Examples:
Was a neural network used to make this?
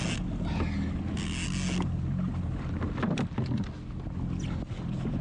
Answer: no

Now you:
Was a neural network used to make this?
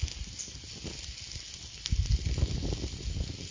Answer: no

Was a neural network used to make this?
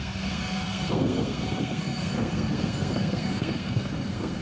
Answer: yes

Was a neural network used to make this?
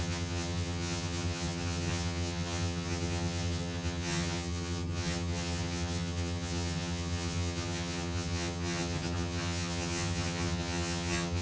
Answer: yes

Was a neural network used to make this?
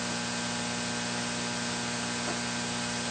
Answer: no